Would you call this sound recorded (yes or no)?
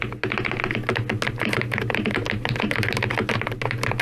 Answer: yes